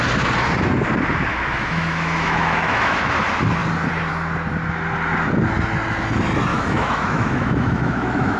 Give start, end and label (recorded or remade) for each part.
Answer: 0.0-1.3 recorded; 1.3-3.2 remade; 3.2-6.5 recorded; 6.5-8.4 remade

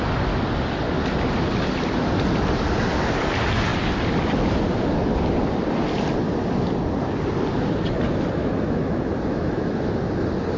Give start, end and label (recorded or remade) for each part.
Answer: 0.0-8.4 recorded; 8.4-10.0 remade; 10.0-10.6 recorded

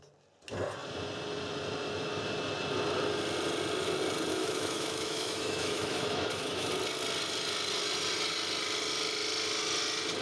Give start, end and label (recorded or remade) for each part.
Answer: 0.0-4.3 recorded; 4.3-6.7 remade; 6.7-10.2 recorded

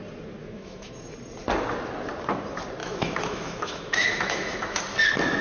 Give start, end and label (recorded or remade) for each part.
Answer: 0.0-0.4 recorded; 0.4-0.9 remade; 0.9-2.8 recorded; 2.8-4.8 remade; 4.8-5.4 recorded

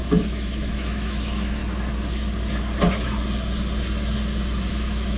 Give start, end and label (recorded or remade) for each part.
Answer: 0.0-1.6 remade; 1.6-4.7 recorded; 4.7-5.2 remade

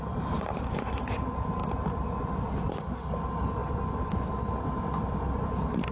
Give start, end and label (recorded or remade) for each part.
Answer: 0.0-5.9 recorded